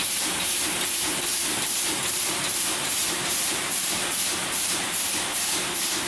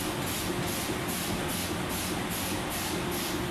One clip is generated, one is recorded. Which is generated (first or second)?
first